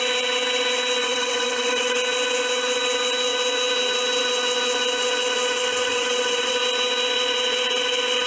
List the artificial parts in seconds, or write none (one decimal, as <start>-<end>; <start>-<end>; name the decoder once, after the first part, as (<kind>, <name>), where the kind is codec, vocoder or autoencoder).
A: 1.0-2.0 (vocoder, WaveNeXt); 5.9-6.5